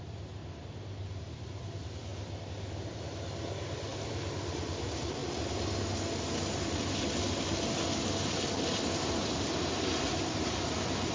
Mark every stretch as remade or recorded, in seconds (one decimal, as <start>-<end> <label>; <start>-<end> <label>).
0.0-0.4 remade; 0.4-1.5 recorded; 1.5-5.2 remade; 5.2-7.8 recorded; 7.8-11.1 remade